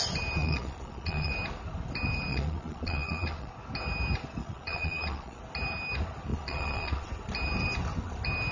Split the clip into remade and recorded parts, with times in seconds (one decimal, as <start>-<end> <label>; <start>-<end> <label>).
0.0-0.4 recorded; 0.4-1.3 remade; 1.3-2.3 recorded; 2.3-3.5 remade; 3.5-4.4 recorded; 4.4-5.4 remade; 5.4-6.3 recorded; 6.3-7.1 remade; 7.1-8.5 recorded